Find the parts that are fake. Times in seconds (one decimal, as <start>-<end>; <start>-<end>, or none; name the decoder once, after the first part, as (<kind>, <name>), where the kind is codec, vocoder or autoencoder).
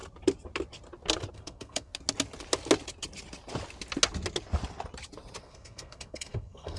1.3-1.9 (codec, SNAC); 5.4-6.8